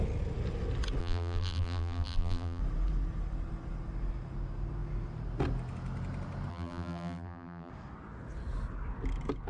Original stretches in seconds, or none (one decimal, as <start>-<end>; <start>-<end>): 0.0-1.0; 2.6-6.5; 7.7-9.5